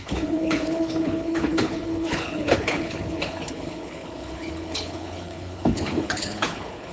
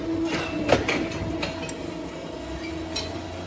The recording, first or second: second